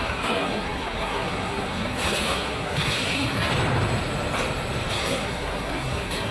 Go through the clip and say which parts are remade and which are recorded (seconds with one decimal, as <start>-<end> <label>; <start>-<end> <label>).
0.0-3.5 remade; 3.5-4.9 recorded; 4.9-6.3 remade